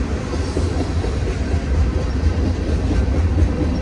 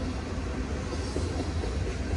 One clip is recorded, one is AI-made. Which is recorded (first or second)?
second